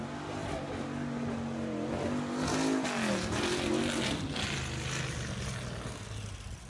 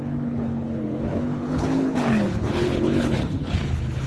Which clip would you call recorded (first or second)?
first